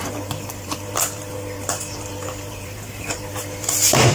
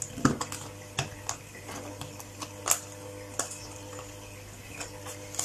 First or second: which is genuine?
second